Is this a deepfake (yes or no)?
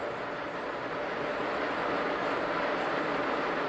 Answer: no